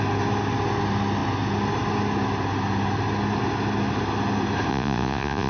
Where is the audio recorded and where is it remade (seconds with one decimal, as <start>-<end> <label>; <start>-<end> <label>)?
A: 0.0-4.7 recorded; 4.7-5.5 remade